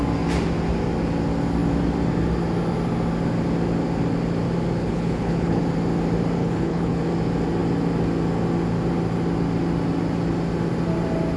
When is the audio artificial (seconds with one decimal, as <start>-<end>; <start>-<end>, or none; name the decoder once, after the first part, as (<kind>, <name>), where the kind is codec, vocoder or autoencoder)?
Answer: 4.8-5.6 (codec, HILCodec); 6.4-7.0